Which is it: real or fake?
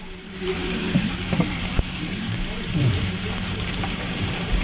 fake